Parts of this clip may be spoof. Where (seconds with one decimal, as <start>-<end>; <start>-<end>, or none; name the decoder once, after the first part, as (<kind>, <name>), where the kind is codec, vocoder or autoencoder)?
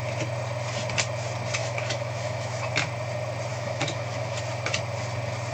1.6-2.7 (autoencoder, DAC-VAE); 3.5-4.4